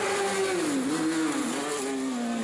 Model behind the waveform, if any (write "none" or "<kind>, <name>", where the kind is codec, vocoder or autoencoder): none